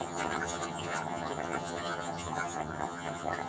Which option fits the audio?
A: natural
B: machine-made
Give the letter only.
B